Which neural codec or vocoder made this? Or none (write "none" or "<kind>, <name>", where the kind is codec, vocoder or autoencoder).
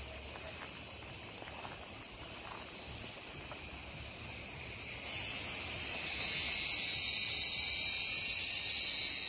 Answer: none